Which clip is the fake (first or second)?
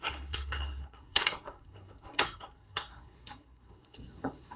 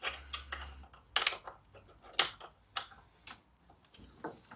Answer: first